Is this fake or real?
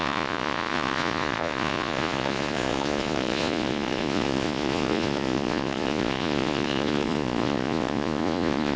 fake